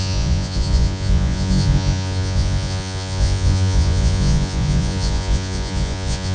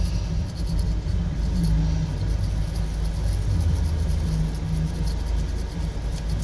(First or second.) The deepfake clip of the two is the first